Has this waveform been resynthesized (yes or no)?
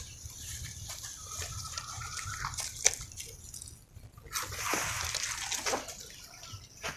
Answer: no